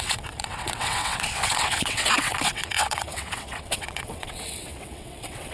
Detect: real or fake fake